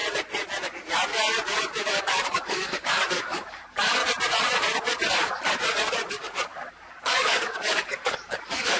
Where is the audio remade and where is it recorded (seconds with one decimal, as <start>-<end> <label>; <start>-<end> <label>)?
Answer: 0.0-2.0 recorded; 2.0-4.0 remade; 4.0-6.1 recorded; 6.1-8.8 remade